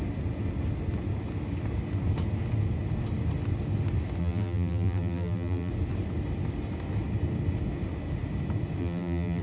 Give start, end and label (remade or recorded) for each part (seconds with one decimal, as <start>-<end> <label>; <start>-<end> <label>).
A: 0.0-4.2 recorded; 4.2-5.7 remade; 5.7-8.8 recorded; 8.8-9.4 remade